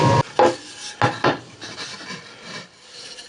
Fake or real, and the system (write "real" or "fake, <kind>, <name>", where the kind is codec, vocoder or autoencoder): real